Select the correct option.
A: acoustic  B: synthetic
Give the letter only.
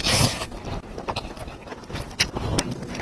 A